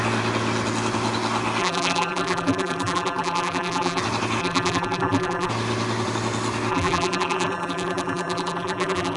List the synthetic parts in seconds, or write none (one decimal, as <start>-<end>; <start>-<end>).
1.6-4.0; 4.4-5.5; 6.7-9.2